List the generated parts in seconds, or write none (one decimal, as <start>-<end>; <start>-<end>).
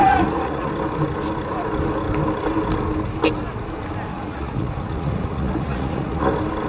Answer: 0.0-0.7; 4.1-6.3